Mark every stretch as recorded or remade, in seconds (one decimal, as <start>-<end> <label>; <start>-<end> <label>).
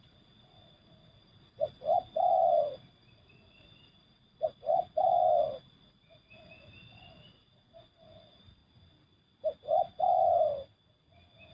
0.0-8.6 remade; 8.6-9.6 recorded; 9.6-10.4 remade; 10.4-11.5 recorded